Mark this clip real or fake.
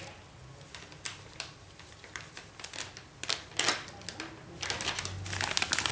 real